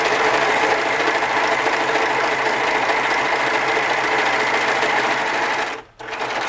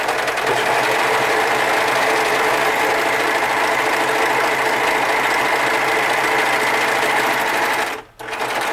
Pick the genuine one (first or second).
second